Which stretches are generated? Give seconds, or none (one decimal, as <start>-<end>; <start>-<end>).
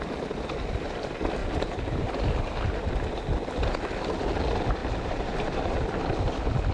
1.4-2.9; 4.8-5.7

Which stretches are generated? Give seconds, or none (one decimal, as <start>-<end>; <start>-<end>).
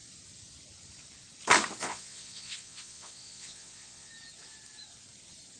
1.8-4.1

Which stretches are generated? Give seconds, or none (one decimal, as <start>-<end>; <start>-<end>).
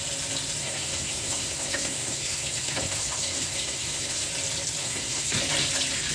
0.6-4.3; 4.8-5.4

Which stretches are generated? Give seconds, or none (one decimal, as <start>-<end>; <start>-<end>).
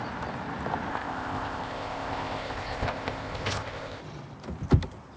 0.9-4.0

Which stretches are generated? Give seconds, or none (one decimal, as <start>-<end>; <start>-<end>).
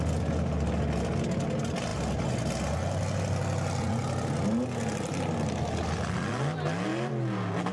none